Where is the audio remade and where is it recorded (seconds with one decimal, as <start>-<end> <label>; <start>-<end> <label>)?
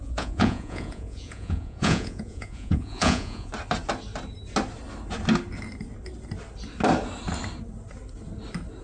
0.0-3.5 remade; 3.5-8.8 recorded